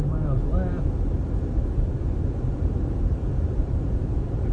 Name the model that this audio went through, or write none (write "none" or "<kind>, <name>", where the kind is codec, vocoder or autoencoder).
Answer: none